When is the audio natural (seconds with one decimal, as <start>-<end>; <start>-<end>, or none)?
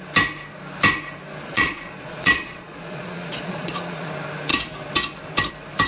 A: 0.0-1.4; 4.1-5.9